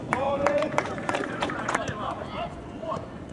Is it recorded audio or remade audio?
remade